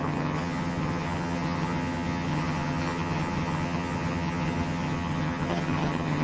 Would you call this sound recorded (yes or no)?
no